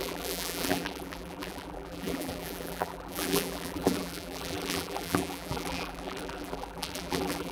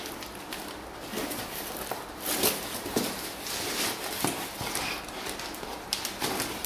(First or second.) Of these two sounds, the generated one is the first